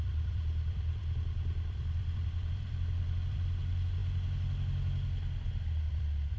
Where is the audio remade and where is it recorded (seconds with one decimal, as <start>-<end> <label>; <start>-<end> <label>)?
0.0-4.0 remade; 4.0-5.9 recorded; 5.9-6.4 remade